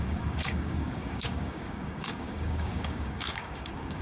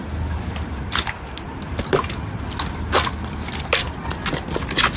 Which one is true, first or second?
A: second